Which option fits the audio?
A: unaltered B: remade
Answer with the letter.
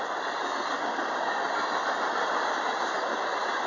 A